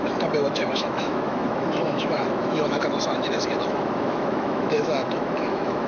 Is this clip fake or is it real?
fake